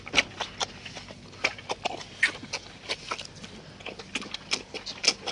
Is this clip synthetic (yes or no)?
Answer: no